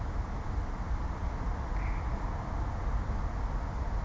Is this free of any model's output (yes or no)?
yes